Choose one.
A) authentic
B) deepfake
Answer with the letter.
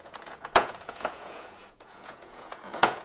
B